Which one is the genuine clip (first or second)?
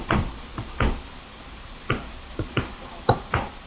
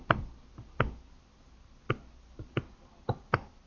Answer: second